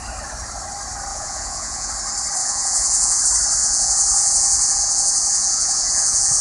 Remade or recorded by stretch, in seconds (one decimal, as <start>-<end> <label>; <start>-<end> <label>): 0.0-1.1 recorded; 1.1-1.9 remade; 1.9-2.4 recorded; 2.4-3.2 remade; 3.2-3.6 recorded; 3.6-6.4 remade